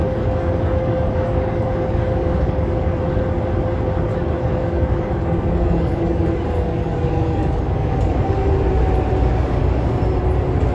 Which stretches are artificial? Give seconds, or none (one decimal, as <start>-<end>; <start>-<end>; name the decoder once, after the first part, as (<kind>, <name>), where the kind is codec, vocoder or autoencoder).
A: 0.0-3.0 (codec, DAC); 4.1-8.5; 9.3-10.0